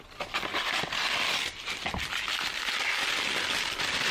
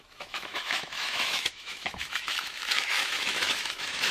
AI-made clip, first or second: second